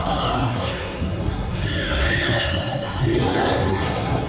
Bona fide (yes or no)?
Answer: no